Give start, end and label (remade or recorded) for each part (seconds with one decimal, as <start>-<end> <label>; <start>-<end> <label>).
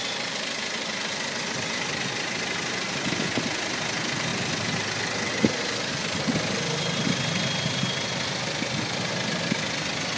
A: 0.0-10.2 recorded